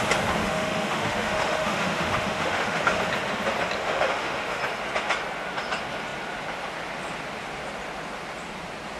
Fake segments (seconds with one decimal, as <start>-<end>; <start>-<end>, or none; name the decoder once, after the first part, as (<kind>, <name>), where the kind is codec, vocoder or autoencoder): 0.4-2.8 (autoencoder, DAC-VAE); 3.8-4.6